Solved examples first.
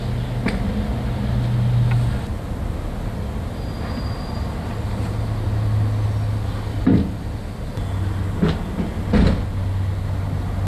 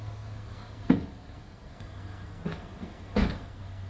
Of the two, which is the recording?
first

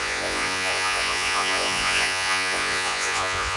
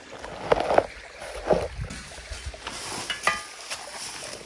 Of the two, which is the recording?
second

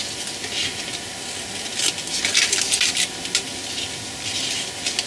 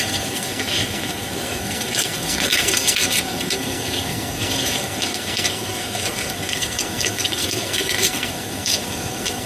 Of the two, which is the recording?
first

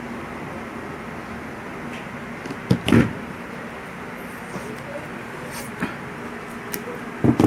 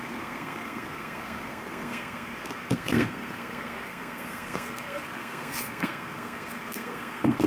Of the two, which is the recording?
first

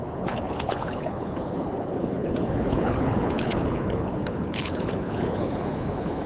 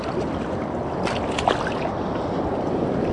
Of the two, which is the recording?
second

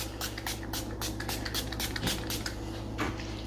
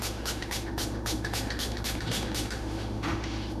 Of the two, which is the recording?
first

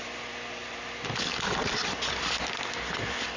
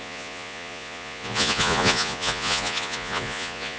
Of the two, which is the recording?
first